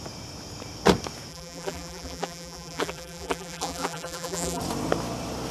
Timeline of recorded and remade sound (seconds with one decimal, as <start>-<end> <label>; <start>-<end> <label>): 0.0-1.3 recorded; 1.3-4.6 remade; 4.6-5.5 recorded